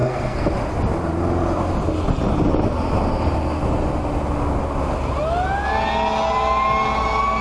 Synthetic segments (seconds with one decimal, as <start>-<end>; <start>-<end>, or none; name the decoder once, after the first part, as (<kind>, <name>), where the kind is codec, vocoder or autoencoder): 0.0-0.5 (codec, SNAC)